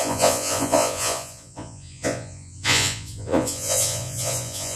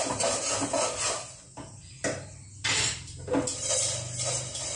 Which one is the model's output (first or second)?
first